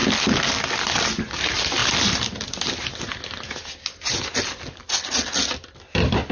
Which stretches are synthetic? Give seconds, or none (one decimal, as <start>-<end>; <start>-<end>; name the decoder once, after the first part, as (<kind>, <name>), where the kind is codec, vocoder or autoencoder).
none